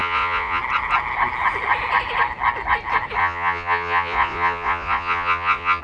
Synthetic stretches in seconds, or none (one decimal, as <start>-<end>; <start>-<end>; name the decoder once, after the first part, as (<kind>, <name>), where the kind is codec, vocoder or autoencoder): 0.0-0.6 (vocoder, Vocos); 3.2-5.8